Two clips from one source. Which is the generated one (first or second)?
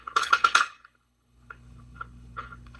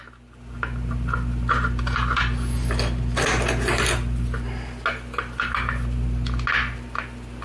first